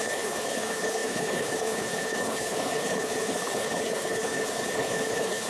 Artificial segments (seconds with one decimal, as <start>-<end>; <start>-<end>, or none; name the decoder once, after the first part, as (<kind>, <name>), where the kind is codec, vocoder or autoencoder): 0.0-5.5 (codec, HILCodec)